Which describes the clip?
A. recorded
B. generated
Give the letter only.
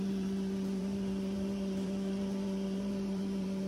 B